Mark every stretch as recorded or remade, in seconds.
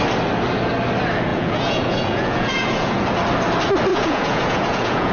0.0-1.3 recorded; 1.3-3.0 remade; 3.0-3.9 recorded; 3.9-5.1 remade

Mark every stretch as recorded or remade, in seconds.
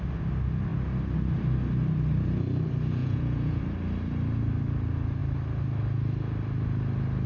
0.0-3.0 recorded; 3.0-3.6 remade; 3.6-7.3 recorded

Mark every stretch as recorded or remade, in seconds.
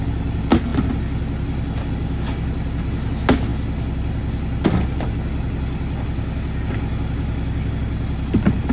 0.0-8.7 recorded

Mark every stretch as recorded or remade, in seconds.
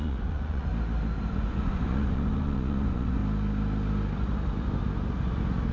0.0-0.7 remade; 0.7-1.3 recorded; 1.3-3.2 remade; 3.2-5.7 recorded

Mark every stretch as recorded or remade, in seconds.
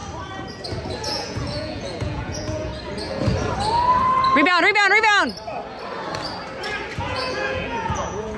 0.0-1.0 recorded; 1.0-2.7 remade; 2.7-7.0 recorded; 7.0-8.4 remade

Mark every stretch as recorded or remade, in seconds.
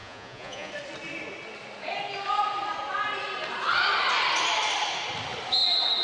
0.0-0.7 remade; 0.7-6.0 recorded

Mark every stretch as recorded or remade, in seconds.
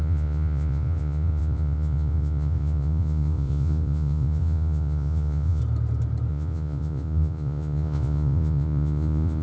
0.0-5.6 remade; 5.6-6.3 recorded; 6.3-9.4 remade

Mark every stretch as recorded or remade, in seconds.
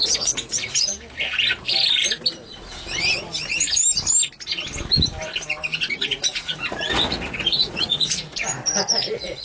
0.0-0.9 remade; 0.9-6.0 recorded; 6.0-8.3 remade; 8.3-9.0 recorded; 9.0-9.4 remade